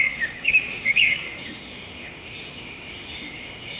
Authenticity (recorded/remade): remade